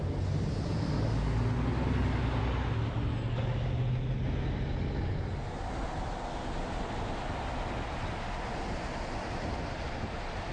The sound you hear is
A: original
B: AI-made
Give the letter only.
A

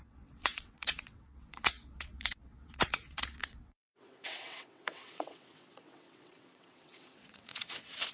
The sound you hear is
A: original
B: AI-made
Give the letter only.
B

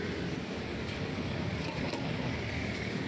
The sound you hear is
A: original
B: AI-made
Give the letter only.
B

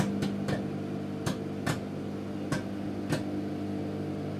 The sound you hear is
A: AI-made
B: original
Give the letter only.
B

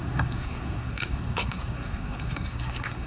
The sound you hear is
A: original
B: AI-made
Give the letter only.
B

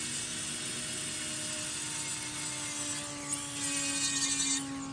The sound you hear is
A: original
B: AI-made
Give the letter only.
A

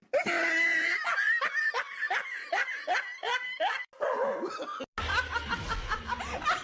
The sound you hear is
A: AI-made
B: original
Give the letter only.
B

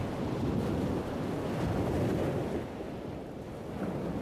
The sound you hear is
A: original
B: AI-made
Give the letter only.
A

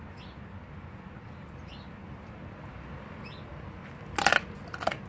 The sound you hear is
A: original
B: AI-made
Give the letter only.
A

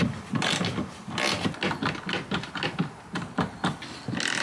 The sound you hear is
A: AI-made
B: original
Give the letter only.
B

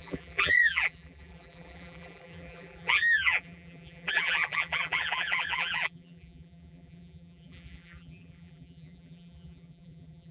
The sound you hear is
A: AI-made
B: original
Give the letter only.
A